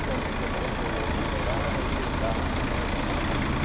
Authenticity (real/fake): real